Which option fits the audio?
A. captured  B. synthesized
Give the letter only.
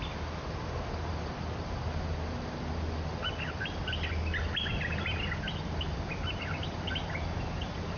A